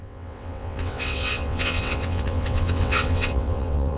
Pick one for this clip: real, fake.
fake